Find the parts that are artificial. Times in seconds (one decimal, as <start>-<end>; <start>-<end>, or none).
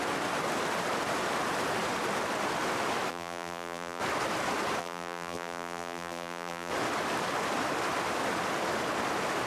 3.1-4.0; 4.8-6.7